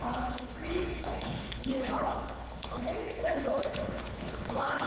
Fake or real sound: fake